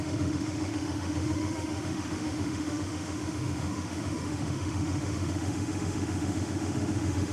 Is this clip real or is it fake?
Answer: fake